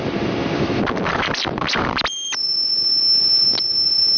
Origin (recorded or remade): remade